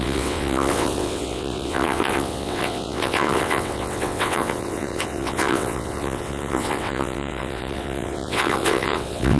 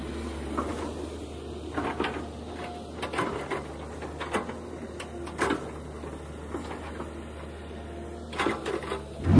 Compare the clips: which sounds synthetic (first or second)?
first